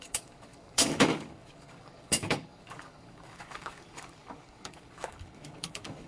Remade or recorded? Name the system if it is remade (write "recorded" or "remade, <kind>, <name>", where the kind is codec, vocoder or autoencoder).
remade, codec, DAC